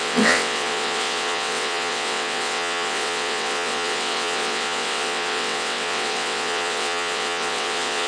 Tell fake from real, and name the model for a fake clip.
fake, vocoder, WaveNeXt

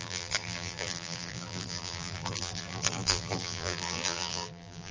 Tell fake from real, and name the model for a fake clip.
fake, vocoder, BigVGAN v2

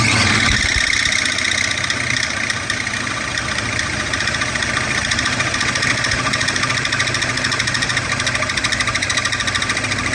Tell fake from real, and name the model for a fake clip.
real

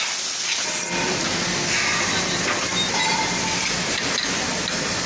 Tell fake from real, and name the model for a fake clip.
real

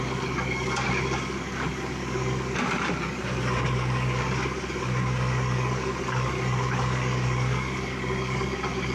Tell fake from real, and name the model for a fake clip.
fake, codec, DAC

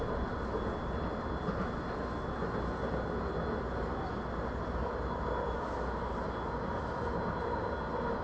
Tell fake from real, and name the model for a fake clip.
real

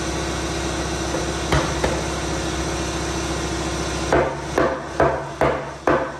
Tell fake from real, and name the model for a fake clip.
real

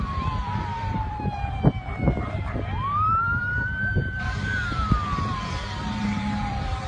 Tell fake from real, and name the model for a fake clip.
fake, vocoder, BigVGAN v2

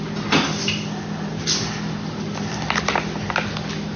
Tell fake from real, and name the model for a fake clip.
real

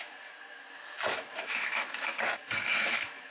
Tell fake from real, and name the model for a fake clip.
fake, autoencoder, DAC-VAE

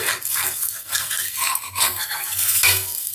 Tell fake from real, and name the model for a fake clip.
fake, codec, SNAC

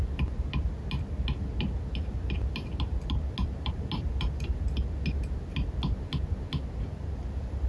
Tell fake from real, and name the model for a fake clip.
real